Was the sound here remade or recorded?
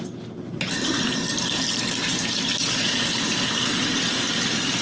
recorded